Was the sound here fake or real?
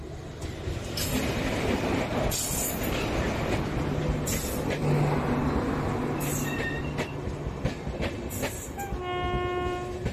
real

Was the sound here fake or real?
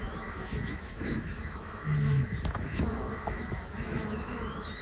fake